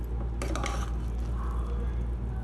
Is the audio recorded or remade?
recorded